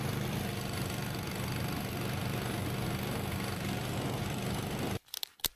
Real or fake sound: real